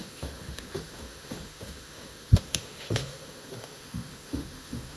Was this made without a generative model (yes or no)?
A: no